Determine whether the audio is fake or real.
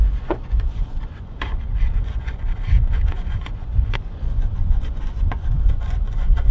fake